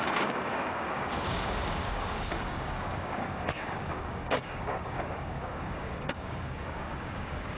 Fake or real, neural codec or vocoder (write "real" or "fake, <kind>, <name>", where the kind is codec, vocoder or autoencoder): fake, codec, DAC